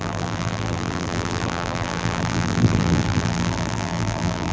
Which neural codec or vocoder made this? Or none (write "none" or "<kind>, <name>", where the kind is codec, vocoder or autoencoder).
vocoder, BigVGAN v2